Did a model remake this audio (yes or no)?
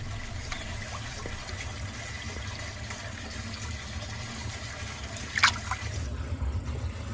no